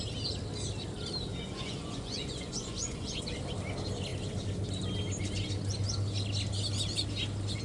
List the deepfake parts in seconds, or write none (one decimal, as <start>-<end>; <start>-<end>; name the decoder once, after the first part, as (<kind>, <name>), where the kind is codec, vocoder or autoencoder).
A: 1.3-3.2 (vocoder, Vocos)